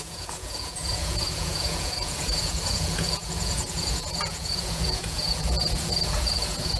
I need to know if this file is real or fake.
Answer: fake